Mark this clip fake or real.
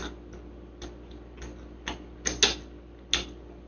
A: real